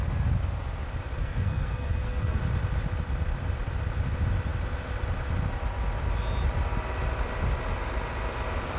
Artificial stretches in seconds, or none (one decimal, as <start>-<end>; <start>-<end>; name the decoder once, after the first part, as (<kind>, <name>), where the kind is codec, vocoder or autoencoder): 1.2-2.4 (codec, SNAC)